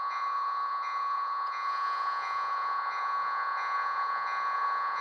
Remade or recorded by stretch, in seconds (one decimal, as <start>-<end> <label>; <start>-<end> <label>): 0.0-5.0 remade